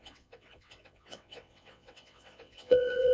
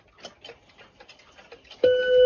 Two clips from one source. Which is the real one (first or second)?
second